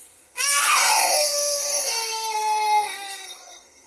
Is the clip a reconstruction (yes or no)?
yes